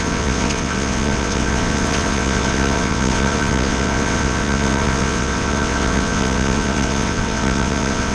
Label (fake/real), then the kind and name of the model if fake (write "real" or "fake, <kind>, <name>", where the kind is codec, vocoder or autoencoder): fake, vocoder, WaveNeXt